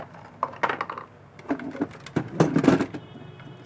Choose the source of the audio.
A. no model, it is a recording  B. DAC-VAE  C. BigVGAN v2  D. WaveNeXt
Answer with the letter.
A